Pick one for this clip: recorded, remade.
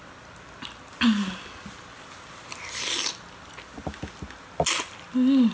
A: recorded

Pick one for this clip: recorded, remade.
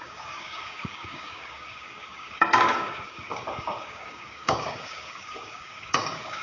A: remade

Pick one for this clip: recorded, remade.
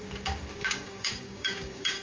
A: remade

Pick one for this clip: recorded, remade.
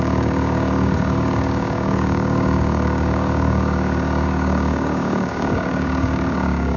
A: remade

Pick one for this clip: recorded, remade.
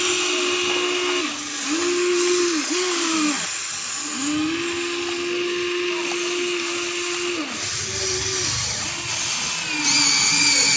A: recorded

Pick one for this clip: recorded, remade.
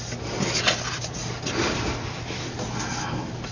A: recorded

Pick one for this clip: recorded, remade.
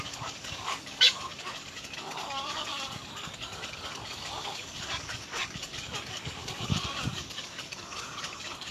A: remade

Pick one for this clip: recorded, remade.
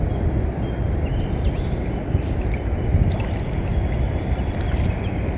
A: recorded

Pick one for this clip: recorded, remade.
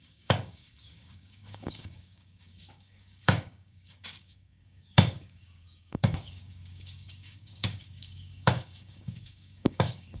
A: remade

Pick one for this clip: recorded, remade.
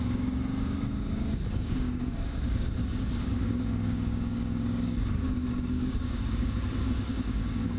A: remade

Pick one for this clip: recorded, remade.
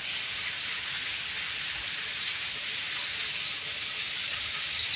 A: recorded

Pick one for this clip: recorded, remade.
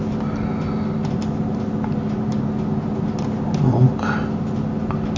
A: recorded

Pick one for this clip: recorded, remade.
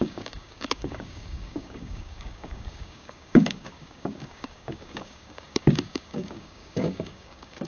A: remade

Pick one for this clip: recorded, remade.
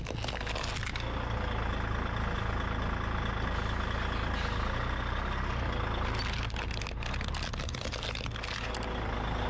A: recorded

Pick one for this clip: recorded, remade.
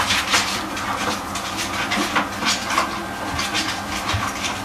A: recorded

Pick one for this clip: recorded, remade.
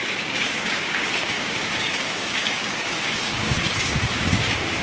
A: remade